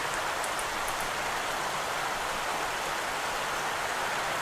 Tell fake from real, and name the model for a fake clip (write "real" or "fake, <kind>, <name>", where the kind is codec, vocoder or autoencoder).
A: real